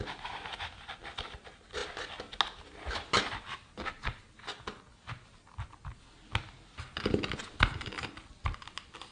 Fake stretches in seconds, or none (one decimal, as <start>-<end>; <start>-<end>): none

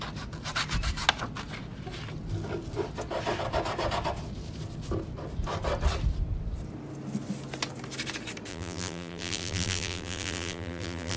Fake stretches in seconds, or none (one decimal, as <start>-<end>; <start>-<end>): 8.5-11.2